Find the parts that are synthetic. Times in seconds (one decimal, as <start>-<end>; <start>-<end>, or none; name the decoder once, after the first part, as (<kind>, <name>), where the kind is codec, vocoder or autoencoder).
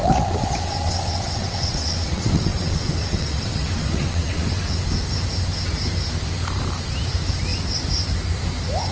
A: 0.0-4.6 (vocoder, WaveNeXt)